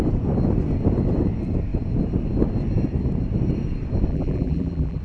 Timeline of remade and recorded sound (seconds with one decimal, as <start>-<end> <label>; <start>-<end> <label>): 0.0-4.1 recorded; 4.1-5.0 remade